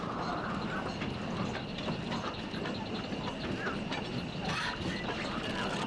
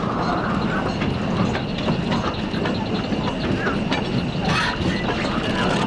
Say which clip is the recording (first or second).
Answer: second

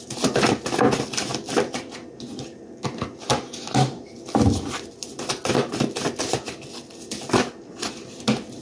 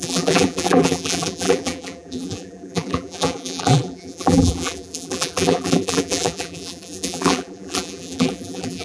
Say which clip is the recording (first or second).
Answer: first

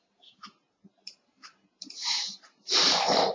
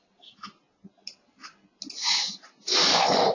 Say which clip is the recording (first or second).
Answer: second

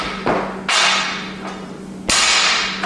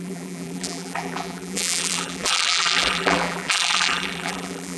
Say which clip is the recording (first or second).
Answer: first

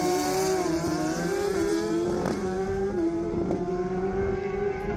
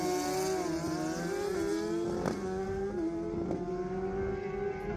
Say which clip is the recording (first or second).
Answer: second